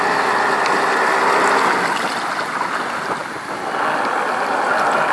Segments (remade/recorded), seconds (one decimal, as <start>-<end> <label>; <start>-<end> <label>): 0.0-5.1 recorded